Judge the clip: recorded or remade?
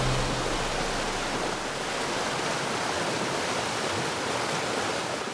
recorded